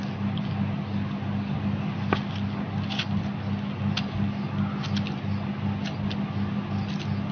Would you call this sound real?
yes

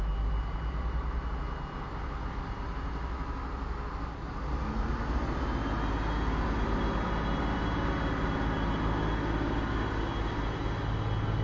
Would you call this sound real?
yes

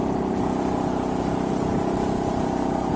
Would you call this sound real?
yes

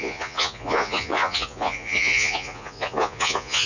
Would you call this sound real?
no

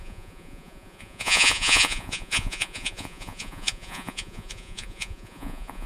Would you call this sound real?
no